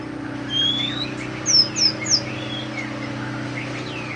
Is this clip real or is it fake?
real